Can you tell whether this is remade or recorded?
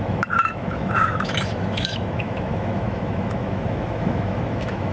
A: remade